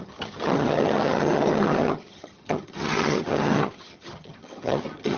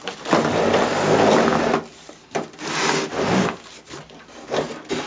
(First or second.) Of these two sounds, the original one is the second